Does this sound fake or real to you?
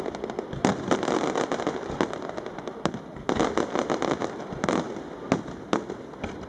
real